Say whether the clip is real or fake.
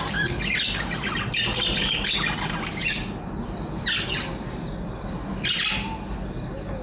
real